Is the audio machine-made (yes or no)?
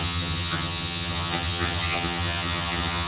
yes